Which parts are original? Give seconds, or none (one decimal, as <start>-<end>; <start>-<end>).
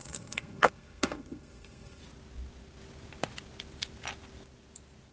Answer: 2.0-5.1